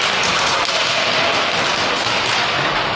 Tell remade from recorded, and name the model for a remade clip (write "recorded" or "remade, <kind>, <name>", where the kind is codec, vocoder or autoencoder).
recorded